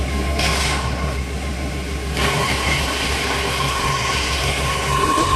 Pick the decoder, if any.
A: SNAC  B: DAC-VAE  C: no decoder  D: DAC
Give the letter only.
A